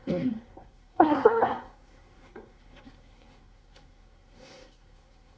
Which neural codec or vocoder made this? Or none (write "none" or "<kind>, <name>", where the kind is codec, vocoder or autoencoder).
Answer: codec, SNAC